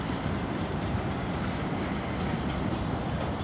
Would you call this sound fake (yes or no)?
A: no